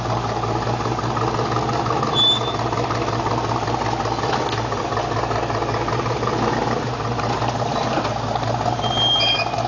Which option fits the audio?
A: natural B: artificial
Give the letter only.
A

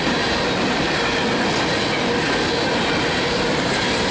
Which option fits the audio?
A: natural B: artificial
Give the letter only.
A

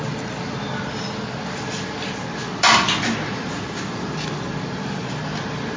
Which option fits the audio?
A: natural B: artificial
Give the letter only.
A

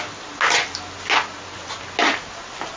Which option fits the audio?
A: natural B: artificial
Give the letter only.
A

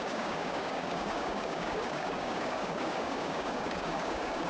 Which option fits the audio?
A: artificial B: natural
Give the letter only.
A